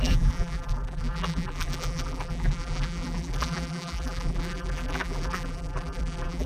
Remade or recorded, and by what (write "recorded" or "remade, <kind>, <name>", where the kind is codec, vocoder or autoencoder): remade, vocoder, BigVGAN v2